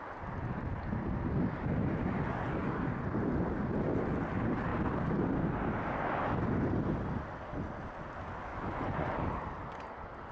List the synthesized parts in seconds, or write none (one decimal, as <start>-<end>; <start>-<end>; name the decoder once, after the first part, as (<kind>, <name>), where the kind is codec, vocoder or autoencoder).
8.5-9.2 (vocoder, Vocos)